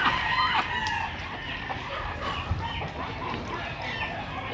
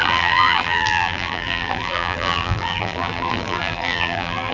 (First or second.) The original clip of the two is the first